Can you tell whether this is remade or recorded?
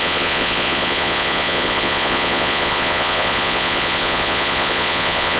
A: remade